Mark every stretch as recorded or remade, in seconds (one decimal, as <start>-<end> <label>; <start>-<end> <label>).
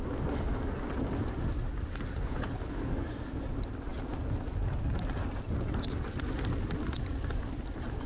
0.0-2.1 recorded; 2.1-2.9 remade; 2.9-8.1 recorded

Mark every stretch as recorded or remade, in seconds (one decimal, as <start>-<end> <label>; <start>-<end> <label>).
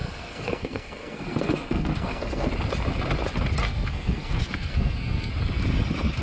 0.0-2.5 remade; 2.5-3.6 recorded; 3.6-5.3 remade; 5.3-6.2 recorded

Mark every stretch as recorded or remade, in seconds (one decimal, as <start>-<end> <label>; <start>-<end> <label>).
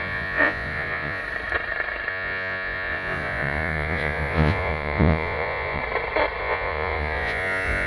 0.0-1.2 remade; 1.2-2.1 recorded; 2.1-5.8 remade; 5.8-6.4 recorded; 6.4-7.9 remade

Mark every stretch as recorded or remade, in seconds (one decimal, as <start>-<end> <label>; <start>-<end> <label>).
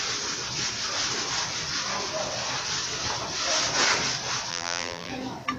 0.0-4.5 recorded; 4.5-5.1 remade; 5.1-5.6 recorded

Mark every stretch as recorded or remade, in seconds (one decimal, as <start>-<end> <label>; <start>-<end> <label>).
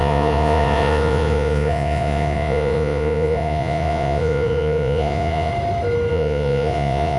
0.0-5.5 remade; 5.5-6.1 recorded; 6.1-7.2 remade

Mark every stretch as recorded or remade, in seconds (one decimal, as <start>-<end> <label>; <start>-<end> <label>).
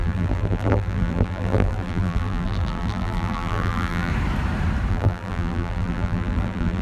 0.0-4.1 remade; 4.1-4.9 recorded; 4.9-6.8 remade